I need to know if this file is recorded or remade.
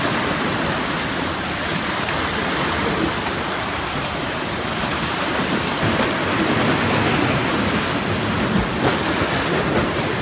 recorded